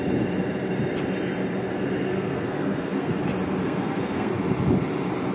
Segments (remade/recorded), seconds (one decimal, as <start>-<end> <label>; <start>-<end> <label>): 0.0-2.0 recorded; 2.0-3.2 remade; 3.2-3.6 recorded; 3.6-4.3 remade; 4.3-5.3 recorded